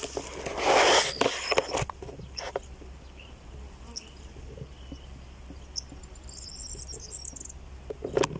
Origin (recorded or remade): recorded